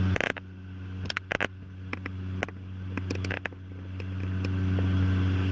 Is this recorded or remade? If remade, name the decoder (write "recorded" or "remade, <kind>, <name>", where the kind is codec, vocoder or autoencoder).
recorded